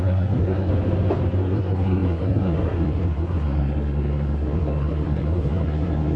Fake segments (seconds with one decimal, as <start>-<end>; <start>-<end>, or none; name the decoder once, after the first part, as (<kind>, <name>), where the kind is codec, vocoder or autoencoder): 0.0-0.7 (codec, SNAC); 1.4-6.2